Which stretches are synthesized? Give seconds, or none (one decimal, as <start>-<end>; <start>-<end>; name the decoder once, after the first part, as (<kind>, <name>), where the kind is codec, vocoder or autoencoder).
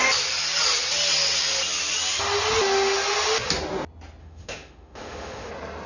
4.2-5.5 (autoencoder, DAC-VAE)